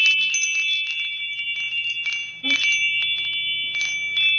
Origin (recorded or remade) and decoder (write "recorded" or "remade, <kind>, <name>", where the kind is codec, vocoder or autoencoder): recorded